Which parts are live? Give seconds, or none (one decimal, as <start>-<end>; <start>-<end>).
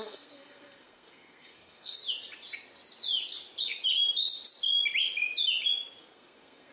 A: 2.0-6.0